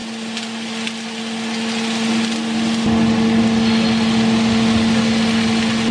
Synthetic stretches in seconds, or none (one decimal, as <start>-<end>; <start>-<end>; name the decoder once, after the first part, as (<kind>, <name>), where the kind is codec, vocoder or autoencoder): none